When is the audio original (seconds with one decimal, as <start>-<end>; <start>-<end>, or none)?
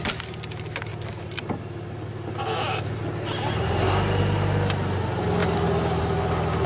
0.0-6.7